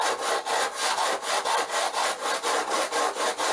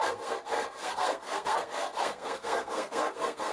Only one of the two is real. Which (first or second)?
first